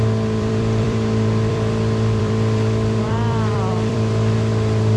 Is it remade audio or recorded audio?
remade